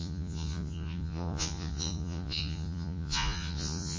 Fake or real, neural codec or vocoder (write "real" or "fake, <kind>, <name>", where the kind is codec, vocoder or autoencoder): fake, vocoder, Vocos